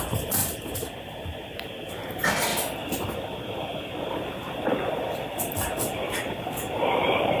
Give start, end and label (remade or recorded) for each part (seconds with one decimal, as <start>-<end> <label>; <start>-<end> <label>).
0.0-2.5 remade; 2.5-4.1 recorded; 4.1-7.4 remade